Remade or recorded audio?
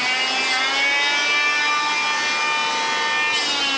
recorded